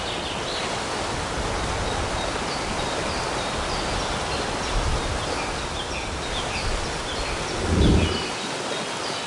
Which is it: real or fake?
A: real